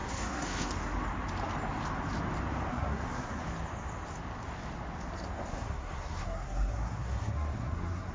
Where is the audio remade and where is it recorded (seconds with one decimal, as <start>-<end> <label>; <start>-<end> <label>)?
0.0-0.7 remade; 0.7-2.7 recorded; 2.7-3.4 remade; 3.4-5.5 recorded; 5.5-8.1 remade